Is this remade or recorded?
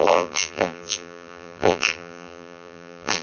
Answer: remade